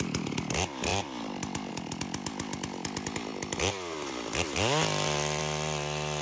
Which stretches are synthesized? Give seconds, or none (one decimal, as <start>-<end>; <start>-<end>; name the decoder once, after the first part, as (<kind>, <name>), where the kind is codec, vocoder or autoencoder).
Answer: none